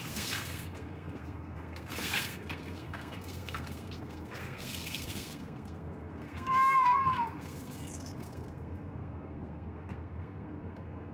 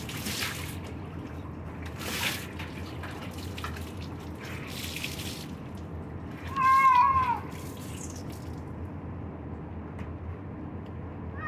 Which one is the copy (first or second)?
first